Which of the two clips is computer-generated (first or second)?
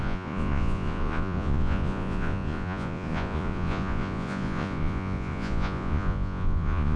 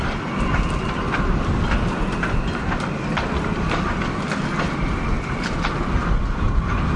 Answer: first